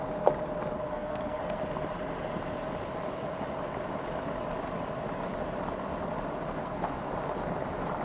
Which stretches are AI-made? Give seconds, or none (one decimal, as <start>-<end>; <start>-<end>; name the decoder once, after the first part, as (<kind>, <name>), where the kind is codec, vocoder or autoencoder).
0.9-1.6 (codec, SNAC); 6.6-7.1